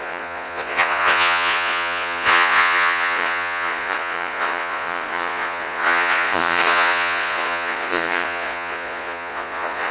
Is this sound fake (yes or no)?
yes